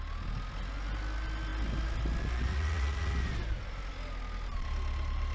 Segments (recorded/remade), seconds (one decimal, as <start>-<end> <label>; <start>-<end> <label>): 0.0-2.5 recorded; 2.5-3.1 remade; 3.1-5.3 recorded